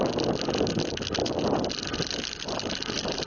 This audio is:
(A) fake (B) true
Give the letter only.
B